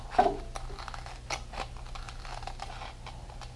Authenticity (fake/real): real